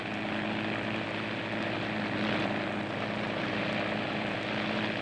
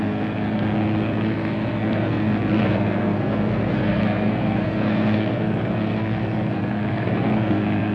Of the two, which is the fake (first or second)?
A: second